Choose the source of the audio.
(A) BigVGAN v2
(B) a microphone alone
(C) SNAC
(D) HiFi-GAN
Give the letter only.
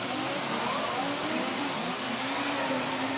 B